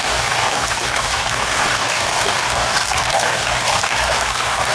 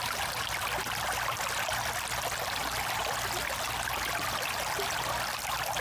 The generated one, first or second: first